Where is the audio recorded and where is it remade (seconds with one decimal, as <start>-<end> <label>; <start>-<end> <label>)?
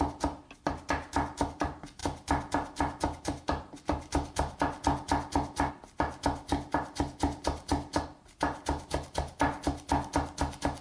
0.0-10.8 recorded